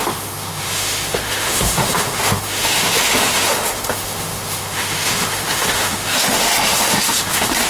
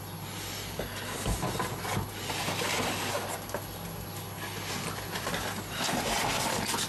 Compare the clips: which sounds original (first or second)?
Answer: second